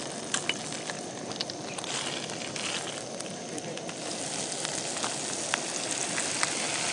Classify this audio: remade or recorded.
recorded